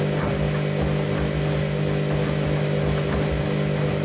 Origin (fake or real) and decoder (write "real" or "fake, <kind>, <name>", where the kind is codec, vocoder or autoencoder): real